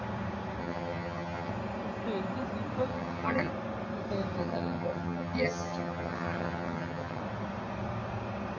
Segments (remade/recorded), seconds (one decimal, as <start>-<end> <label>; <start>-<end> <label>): 0.0-0.6 recorded; 0.6-1.5 remade; 1.5-2.9 recorded; 2.9-3.5 remade; 3.5-4.4 recorded; 4.4-7.2 remade; 7.2-8.6 recorded